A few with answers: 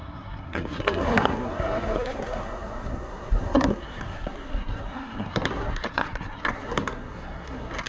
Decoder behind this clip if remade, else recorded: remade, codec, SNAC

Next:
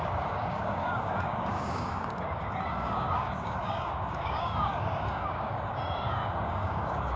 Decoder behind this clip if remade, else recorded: remade, codec, DAC